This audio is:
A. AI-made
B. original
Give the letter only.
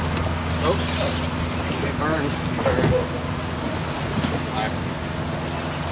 B